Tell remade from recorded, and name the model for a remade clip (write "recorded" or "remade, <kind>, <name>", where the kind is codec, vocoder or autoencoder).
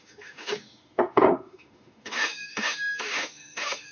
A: remade, autoencoder, DAC-VAE